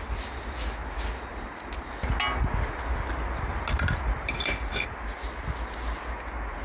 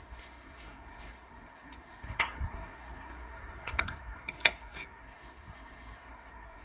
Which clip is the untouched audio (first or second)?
first